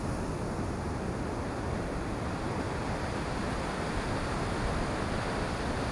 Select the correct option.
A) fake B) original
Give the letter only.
B